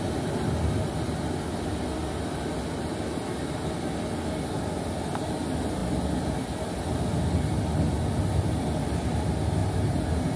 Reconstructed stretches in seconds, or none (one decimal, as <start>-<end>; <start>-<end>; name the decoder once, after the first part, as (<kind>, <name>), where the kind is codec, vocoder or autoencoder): 9.6-10.4 (vocoder, BigVGAN v2)